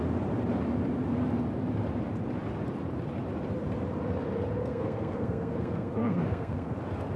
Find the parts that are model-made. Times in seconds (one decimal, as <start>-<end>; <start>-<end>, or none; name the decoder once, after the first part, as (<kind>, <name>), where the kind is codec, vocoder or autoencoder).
4.7-6.7 (codec, SNAC)